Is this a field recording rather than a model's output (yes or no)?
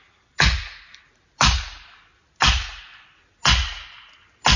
yes